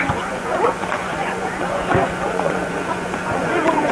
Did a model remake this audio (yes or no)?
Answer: yes